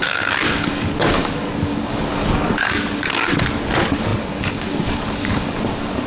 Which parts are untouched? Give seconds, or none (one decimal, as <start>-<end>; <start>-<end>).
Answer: none